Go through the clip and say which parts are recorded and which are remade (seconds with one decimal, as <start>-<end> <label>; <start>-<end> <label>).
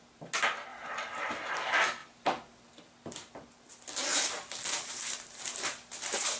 0.0-0.7 recorded; 0.7-1.3 remade; 1.3-4.1 recorded; 4.1-5.5 remade; 5.5-6.4 recorded